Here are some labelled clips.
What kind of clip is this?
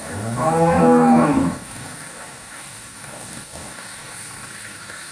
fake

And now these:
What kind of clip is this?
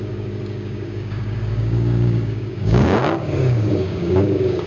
fake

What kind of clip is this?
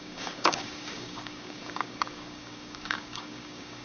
fake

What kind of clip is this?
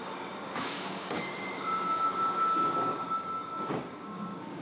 fake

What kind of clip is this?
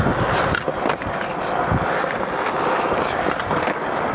real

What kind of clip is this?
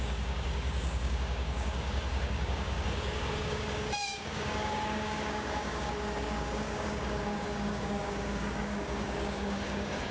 fake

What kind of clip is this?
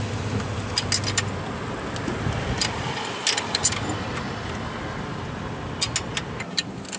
real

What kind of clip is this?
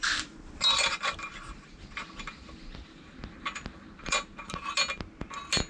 real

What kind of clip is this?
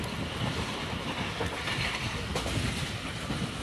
real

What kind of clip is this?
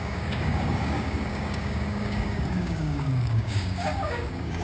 fake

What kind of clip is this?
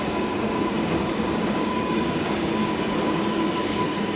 fake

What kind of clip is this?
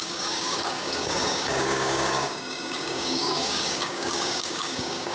fake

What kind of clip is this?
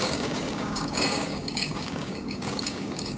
fake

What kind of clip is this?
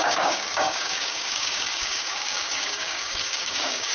fake